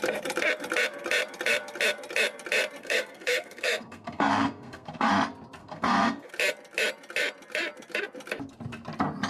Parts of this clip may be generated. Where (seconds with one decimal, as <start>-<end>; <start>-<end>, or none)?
2.8-5.1; 5.6-6.3